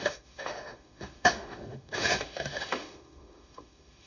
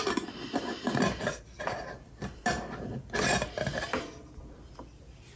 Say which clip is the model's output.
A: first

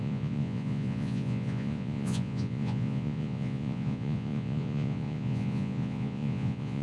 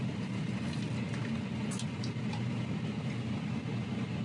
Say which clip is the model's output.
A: first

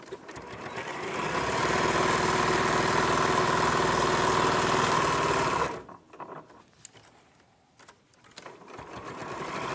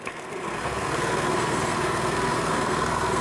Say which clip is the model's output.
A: second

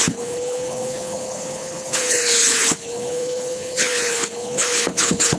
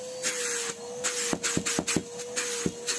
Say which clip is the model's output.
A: first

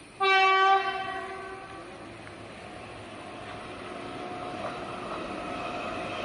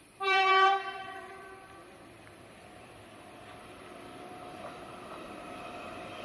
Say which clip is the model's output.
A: second